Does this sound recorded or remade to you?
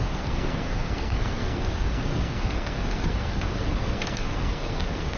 remade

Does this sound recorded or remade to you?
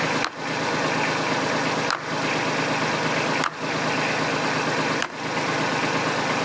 recorded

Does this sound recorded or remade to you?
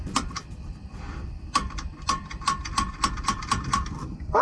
remade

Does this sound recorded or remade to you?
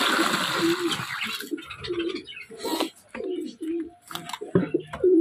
recorded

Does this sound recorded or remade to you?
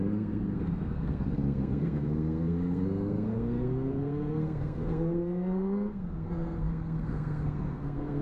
remade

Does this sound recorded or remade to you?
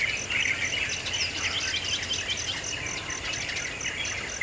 recorded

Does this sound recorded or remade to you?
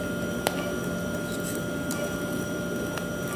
recorded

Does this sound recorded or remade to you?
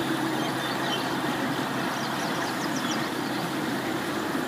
recorded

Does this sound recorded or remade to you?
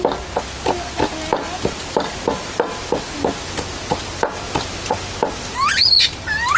recorded